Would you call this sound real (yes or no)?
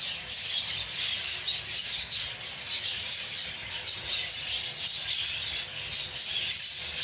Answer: yes